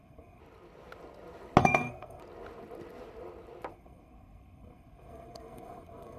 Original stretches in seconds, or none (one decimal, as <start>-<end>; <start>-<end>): 0.4-1.6; 2.2-3.7